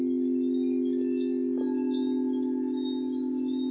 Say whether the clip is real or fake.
real